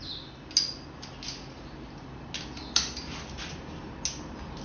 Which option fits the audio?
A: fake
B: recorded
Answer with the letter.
B